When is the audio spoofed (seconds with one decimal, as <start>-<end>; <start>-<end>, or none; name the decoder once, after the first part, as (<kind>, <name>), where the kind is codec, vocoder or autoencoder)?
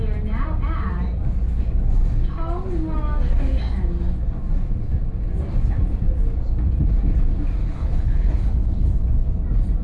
7.6-9.1 (codec, HILCodec)